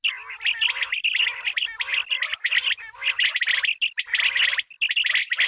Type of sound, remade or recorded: recorded